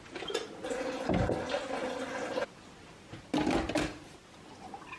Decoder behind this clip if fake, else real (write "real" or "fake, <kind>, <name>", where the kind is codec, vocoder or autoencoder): real